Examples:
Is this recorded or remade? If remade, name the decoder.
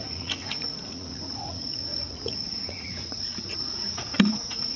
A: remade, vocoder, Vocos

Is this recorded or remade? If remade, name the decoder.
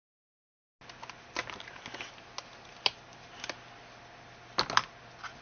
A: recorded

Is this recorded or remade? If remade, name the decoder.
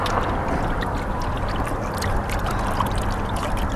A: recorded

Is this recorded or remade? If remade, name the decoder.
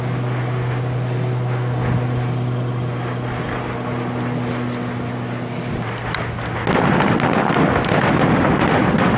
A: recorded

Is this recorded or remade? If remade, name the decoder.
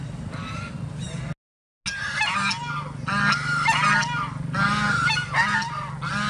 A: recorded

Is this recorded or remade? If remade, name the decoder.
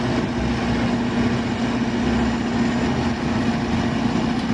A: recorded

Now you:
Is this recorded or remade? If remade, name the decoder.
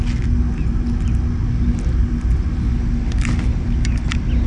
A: recorded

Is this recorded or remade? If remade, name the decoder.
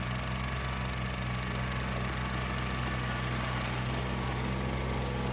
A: recorded